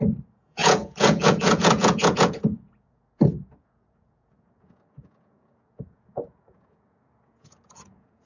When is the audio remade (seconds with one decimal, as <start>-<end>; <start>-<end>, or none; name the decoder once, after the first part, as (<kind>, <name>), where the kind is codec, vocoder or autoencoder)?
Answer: 0.0-8.3 (vocoder, Vocos)